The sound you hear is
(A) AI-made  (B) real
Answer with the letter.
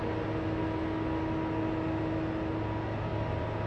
B